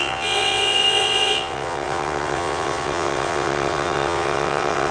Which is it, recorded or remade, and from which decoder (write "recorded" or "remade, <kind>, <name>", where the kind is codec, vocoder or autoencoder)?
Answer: remade, vocoder, WaveNeXt